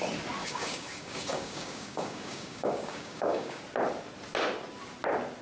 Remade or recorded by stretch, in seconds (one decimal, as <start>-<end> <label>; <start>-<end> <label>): 0.0-0.4 recorded; 0.4-3.6 remade; 3.6-5.4 recorded